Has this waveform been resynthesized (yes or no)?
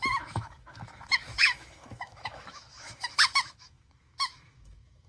yes